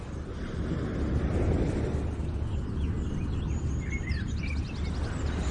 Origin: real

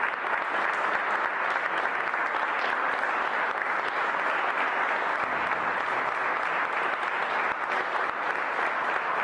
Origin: real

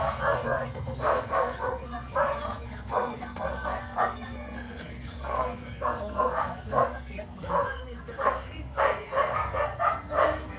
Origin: fake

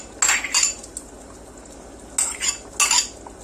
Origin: real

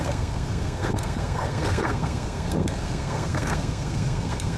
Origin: fake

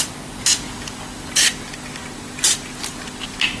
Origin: real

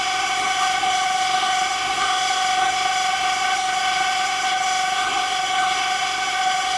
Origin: fake